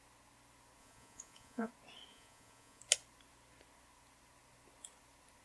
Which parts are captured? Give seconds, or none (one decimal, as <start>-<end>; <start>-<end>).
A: 0.0-0.8; 1.7-2.1; 2.8-5.4